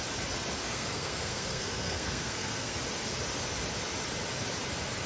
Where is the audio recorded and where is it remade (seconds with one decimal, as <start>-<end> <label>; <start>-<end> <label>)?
0.0-0.6 recorded; 0.6-2.8 remade; 2.8-5.1 recorded